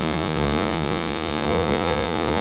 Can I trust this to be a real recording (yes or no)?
no